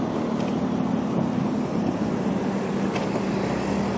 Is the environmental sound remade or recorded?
recorded